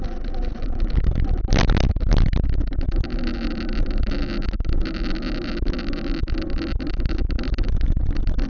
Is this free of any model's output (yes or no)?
yes